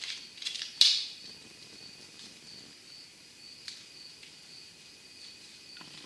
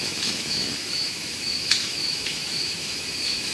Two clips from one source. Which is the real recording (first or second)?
first